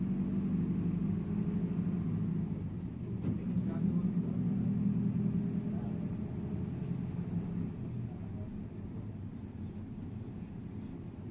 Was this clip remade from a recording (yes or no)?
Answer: no